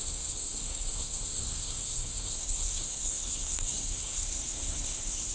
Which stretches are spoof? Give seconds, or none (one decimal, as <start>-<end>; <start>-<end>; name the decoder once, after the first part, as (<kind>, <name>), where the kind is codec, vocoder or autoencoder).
0.0-5.3 (codec, SNAC)

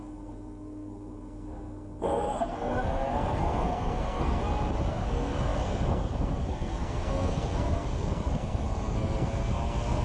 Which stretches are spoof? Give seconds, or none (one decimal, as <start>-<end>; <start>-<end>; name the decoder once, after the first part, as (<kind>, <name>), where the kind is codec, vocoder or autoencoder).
0.0-4.4 (codec, SNAC); 4.9-10.0

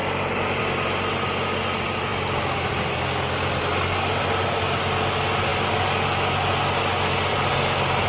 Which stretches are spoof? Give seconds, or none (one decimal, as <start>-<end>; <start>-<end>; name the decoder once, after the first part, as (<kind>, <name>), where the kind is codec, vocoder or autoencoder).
none

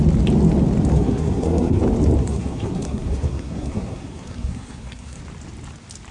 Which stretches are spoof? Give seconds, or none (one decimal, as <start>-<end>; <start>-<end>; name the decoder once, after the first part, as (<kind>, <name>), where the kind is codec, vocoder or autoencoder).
0.9-1.8 (codec, SNAC); 2.2-5.2

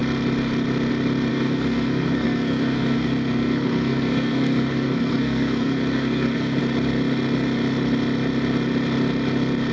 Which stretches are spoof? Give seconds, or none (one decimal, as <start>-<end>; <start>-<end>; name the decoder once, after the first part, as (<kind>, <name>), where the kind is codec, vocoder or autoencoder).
1.3-6.6 (codec, SNAC)

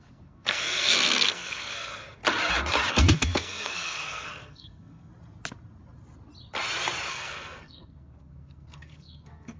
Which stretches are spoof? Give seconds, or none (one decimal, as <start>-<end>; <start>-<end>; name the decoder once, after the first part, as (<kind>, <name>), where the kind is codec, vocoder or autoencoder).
0.0-2.2 (codec, SNAC); 2.9-5.1; 7.1-9.6

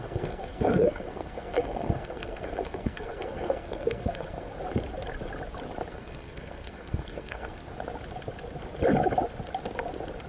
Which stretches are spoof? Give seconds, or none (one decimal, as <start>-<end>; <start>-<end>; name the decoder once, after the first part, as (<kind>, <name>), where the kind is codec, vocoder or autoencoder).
0.0-4.5 (codec, SNAC); 5.9-7.6